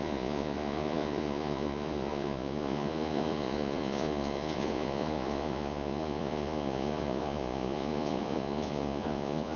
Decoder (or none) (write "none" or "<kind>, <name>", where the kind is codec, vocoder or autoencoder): vocoder, Vocos